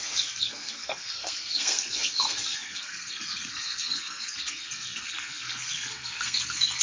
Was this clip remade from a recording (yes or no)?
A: yes